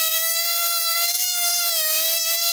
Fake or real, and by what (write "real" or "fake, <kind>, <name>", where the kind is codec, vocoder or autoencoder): fake, autoencoder, DAC-VAE